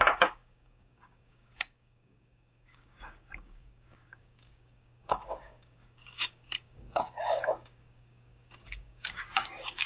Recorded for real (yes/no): no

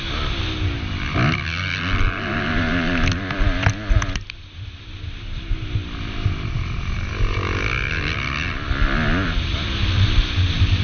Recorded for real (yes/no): yes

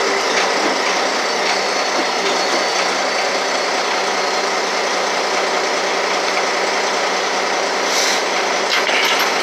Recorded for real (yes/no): yes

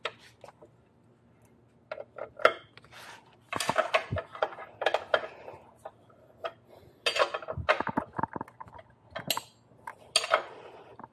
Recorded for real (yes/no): yes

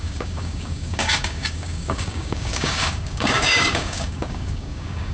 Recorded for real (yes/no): no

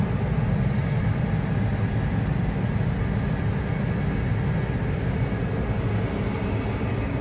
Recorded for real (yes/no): yes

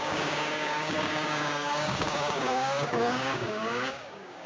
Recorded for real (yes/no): no